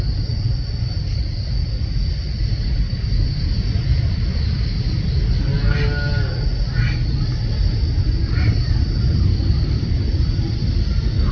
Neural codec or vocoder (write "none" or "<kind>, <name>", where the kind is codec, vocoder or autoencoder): none